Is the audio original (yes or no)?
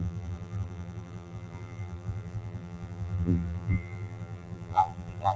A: no